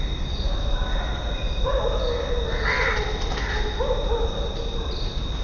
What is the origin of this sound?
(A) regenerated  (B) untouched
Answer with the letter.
B